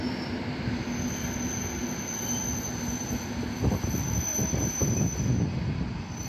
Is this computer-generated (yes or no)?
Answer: no